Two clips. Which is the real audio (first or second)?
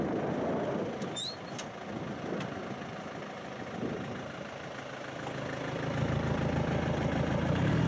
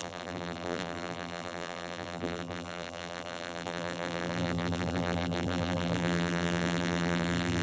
first